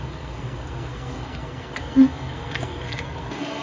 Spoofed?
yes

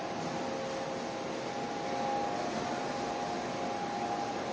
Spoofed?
no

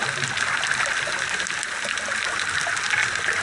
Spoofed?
no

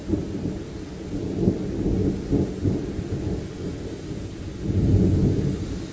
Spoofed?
no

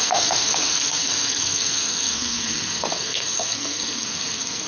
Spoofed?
yes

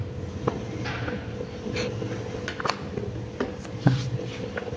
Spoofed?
no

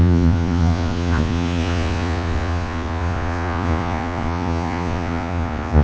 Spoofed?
yes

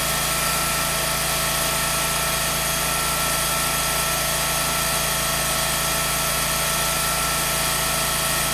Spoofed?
no